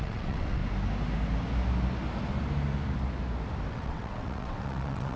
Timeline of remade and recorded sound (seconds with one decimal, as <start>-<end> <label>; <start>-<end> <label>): 0.0-0.6 remade; 0.6-3.7 recorded; 3.7-5.2 remade